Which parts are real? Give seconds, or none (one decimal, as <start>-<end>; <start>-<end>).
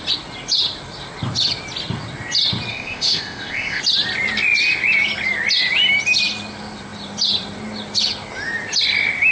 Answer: 0.0-2.7; 3.8-9.3